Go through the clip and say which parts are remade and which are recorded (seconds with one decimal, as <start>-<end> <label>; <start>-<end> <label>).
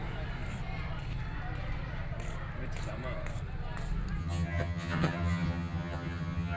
0.0-4.2 recorded; 4.2-6.6 remade